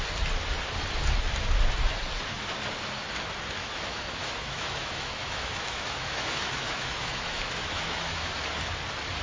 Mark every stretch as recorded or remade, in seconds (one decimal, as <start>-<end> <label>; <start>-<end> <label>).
0.0-3.6 recorded; 3.6-8.3 remade; 8.3-9.2 recorded